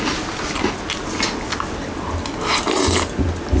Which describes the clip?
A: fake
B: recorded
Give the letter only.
B